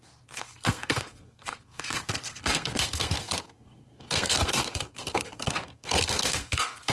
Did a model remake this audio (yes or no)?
yes